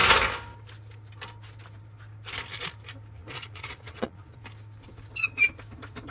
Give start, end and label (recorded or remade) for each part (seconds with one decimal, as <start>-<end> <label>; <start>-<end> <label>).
0.0-3.2 recorded; 3.2-4.4 remade; 4.4-6.1 recorded